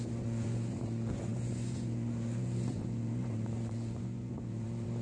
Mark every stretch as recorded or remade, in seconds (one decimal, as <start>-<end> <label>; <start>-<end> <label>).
0.0-5.0 remade